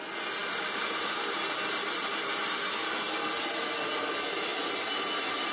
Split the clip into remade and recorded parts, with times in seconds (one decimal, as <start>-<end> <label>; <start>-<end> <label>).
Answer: 0.0-5.5 recorded